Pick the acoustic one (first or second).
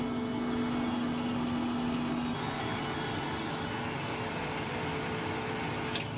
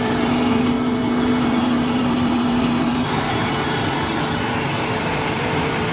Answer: first